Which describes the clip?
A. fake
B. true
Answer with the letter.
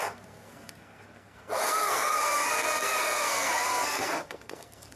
A